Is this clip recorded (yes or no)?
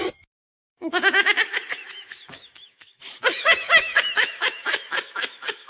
no